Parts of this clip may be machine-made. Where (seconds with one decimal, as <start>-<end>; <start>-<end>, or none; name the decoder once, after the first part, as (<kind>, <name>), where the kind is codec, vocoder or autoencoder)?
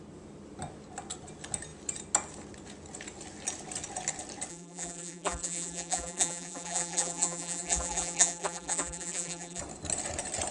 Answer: 4.5-9.6 (vocoder, BigVGAN v2)